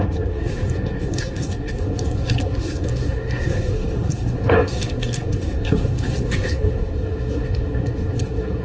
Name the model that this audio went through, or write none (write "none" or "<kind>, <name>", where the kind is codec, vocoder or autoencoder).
codec, SNAC